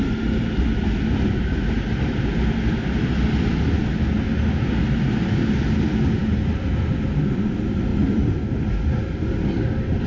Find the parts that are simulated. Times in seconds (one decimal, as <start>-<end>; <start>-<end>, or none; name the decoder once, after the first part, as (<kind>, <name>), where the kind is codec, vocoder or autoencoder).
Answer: none